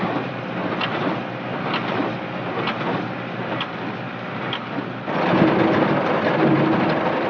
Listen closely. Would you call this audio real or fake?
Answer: real